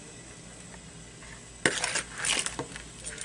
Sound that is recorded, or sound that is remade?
recorded